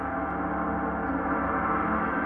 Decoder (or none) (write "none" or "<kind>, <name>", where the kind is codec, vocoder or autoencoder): none